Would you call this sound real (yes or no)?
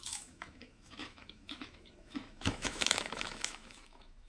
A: no